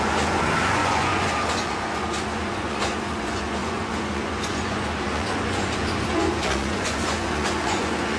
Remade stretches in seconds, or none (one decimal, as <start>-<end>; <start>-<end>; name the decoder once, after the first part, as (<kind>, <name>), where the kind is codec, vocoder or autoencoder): 0.0-8.2 (vocoder, Vocos)